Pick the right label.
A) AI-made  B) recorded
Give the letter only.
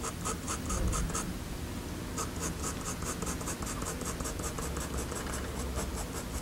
B